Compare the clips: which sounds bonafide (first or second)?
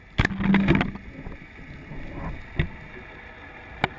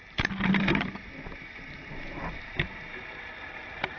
first